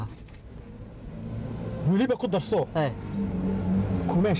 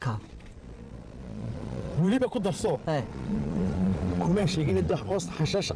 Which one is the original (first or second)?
first